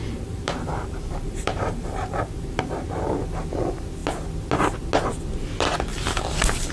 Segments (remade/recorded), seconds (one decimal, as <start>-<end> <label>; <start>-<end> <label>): 0.0-2.6 remade; 2.6-5.9 recorded; 5.9-6.7 remade